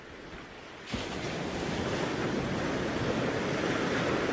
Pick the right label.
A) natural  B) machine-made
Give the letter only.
A